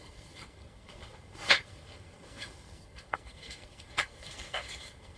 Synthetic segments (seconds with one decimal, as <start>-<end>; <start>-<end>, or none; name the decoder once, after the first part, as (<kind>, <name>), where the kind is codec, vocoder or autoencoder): 0.0-5.2 (codec, SNAC)